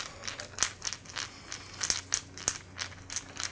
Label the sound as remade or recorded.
recorded